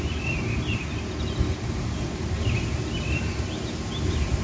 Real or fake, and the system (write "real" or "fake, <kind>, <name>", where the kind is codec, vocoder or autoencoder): real